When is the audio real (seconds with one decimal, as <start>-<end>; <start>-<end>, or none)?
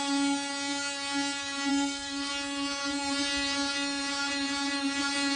0.0-1.7; 2.3-5.4